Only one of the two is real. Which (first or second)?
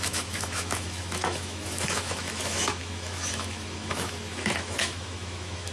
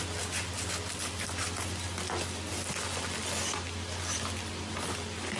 second